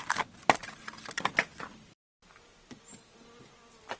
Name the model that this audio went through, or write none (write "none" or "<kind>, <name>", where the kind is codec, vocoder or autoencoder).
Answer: none